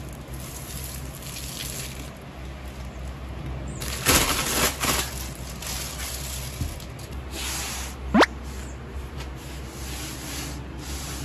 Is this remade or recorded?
recorded